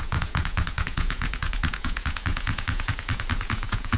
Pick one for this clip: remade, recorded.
remade